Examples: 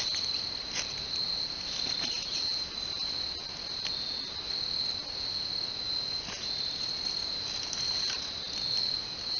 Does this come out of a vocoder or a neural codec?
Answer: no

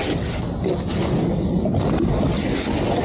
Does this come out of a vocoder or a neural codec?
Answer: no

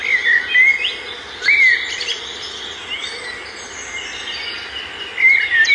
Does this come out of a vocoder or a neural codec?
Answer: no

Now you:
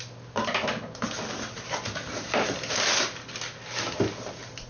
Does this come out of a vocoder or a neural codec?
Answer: no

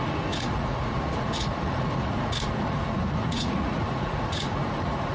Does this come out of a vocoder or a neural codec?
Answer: yes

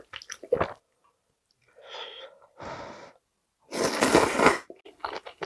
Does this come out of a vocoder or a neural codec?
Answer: no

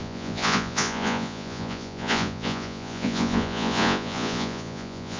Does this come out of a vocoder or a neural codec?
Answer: yes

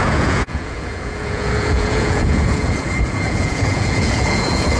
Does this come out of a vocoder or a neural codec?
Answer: yes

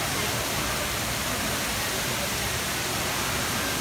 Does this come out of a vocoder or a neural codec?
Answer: no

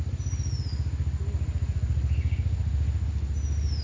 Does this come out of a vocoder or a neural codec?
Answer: no